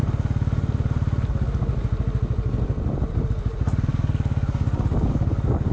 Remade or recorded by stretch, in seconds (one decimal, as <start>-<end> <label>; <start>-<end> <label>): 0.0-3.9 recorded; 3.9-5.7 remade